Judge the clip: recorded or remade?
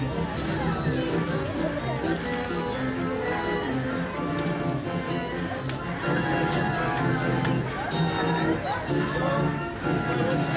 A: recorded